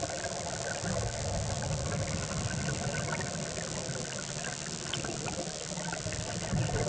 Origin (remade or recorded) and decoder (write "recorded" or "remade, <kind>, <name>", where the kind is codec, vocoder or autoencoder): recorded